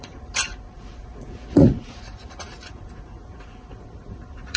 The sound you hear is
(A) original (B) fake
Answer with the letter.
B